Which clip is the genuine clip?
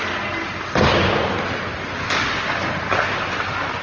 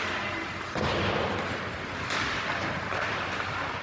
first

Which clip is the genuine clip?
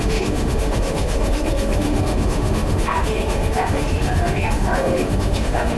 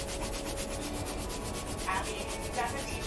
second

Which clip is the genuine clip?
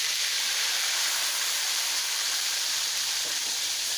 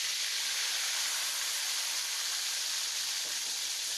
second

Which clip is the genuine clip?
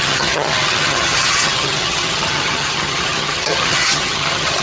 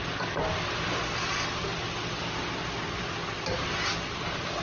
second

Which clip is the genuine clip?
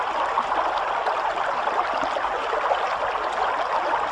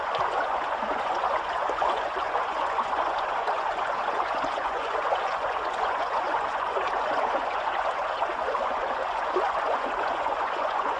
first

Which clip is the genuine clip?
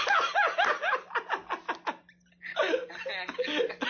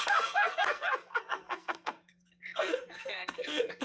first